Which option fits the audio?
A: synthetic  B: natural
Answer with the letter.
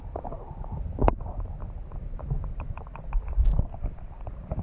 B